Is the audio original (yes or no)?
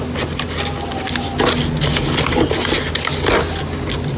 yes